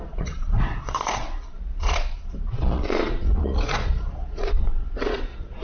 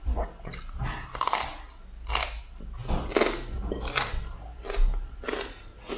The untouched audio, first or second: second